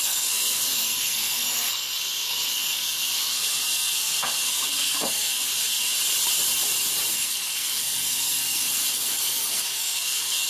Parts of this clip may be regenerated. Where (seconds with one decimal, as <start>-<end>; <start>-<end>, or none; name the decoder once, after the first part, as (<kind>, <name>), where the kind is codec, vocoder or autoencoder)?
0.0-5.9 (codec, SNAC); 7.1-10.5